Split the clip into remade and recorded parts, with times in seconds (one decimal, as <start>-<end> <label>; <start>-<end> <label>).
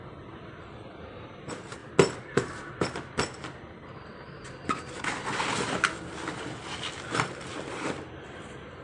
0.0-8.8 recorded